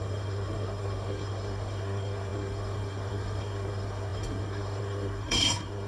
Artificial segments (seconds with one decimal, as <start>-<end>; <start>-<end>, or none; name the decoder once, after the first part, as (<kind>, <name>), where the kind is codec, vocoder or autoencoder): 0.0-5.9 (codec, SNAC)